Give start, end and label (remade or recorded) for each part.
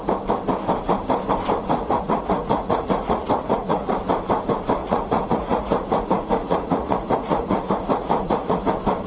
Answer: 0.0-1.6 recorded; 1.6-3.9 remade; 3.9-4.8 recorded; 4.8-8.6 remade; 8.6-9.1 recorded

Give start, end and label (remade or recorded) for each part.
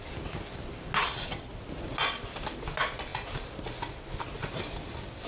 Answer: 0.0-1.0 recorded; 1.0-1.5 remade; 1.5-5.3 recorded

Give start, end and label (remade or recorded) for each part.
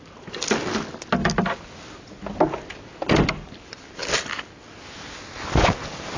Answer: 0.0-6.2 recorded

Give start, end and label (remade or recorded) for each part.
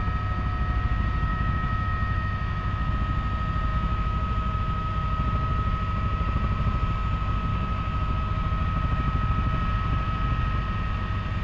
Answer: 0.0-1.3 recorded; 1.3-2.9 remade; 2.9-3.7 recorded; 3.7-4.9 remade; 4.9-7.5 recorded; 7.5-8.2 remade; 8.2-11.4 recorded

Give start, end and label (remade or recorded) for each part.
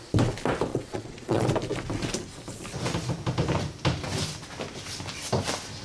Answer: 0.0-0.7 recorded; 0.7-1.5 remade; 1.5-5.8 recorded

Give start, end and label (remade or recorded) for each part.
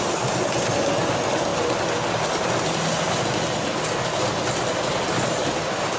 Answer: 0.0-6.0 recorded